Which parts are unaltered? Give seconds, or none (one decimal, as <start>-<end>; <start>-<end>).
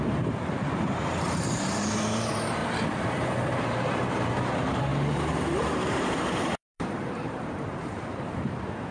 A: 2.6-3.6